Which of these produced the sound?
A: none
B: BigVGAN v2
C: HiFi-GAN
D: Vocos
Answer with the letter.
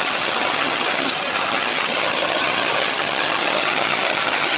C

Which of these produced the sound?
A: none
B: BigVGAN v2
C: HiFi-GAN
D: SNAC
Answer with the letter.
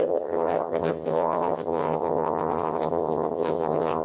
C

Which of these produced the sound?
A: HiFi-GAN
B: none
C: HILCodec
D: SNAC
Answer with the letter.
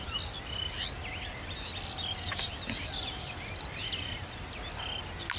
B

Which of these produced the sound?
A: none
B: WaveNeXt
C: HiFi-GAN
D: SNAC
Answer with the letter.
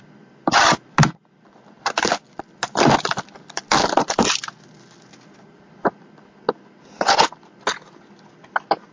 A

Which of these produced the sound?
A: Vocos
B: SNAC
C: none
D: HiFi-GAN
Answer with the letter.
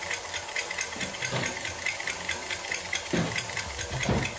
C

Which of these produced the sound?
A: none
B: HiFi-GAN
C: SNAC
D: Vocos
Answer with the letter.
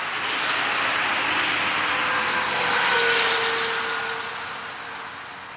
A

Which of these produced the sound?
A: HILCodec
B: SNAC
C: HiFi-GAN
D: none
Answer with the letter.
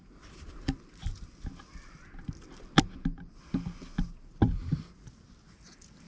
D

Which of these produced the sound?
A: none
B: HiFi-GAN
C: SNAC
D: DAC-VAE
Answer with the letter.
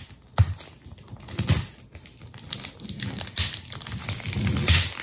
A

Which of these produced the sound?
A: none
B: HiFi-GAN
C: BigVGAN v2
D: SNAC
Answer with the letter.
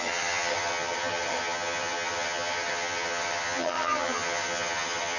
B